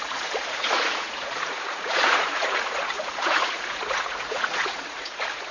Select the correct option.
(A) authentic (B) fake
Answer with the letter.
B